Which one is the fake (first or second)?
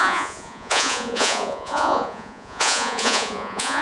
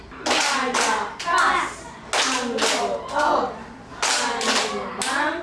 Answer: first